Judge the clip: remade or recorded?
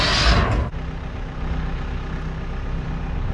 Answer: recorded